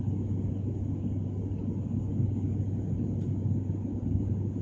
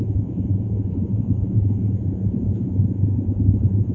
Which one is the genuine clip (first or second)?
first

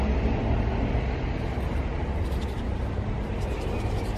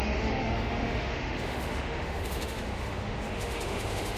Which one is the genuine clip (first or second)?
first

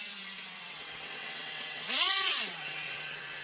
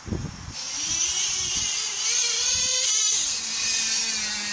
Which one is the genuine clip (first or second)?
second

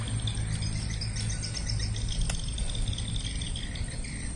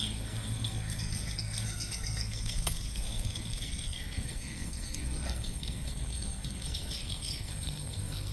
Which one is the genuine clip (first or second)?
first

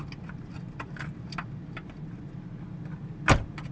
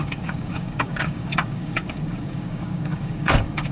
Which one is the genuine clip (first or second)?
first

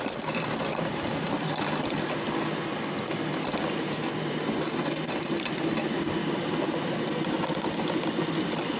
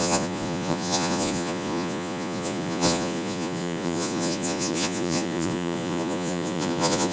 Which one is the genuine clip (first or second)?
first